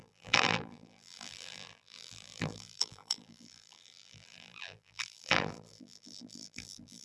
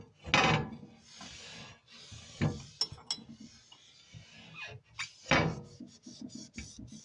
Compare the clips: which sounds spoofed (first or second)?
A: first